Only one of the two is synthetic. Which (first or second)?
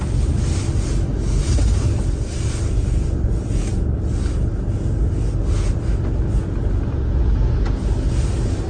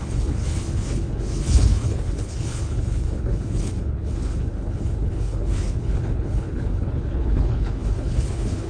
second